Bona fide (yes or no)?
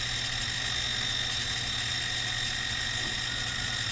yes